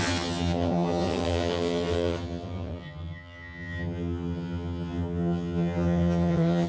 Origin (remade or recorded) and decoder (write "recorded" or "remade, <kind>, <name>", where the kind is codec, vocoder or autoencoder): remade, vocoder, HiFi-GAN